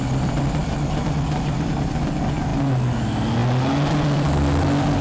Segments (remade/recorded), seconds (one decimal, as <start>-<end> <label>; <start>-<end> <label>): 0.0-5.0 recorded